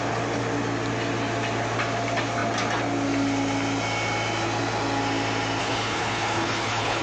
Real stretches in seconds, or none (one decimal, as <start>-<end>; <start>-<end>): 0.0-5.6